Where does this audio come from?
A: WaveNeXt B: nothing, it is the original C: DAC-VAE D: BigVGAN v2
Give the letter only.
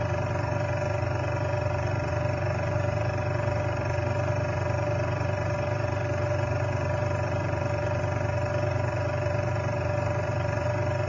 D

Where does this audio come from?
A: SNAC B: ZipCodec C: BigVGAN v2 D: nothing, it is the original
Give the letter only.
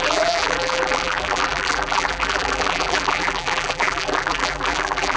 C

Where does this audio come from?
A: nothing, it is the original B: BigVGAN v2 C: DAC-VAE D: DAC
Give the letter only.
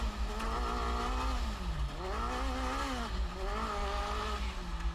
A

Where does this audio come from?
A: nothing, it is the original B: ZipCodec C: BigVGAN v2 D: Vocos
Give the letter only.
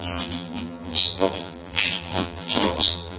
C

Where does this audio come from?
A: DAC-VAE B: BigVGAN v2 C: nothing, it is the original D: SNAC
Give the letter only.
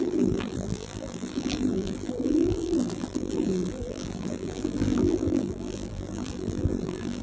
B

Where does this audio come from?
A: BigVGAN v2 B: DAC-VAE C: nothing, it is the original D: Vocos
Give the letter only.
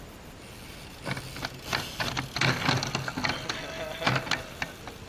C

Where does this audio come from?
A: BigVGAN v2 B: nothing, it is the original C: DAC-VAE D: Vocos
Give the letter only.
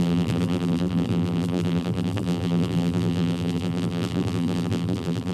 A